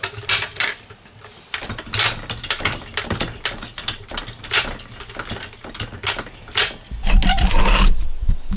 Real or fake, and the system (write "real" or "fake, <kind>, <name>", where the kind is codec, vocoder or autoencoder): real